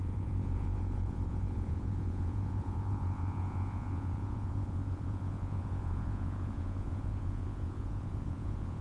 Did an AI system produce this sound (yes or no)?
yes